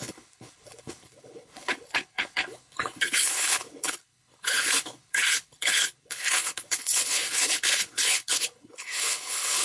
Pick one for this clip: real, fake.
fake